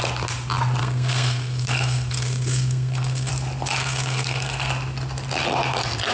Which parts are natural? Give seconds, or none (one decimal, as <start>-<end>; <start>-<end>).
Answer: 0.0-0.8; 3.3-3.8; 4.7-6.1